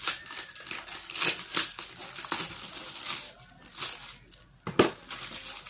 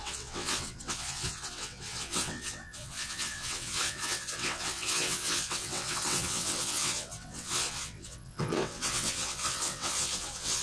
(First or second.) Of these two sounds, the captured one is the first